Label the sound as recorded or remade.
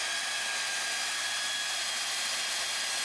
recorded